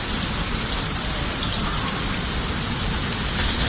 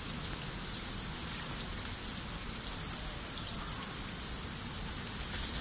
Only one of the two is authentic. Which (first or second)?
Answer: second